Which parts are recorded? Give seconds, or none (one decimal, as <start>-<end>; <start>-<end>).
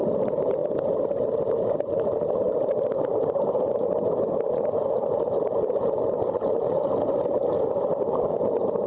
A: 0.0-0.6; 4.3-5.0; 7.9-8.9